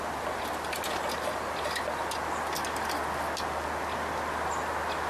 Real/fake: real